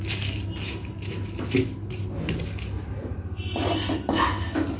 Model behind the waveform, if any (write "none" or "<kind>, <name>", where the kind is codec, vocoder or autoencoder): none